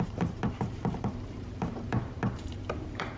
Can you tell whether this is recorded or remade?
remade